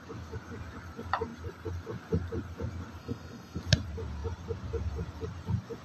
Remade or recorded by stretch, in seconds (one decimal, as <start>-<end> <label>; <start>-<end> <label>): 0.0-3.0 recorded; 3.0-3.6 remade; 3.6-5.8 recorded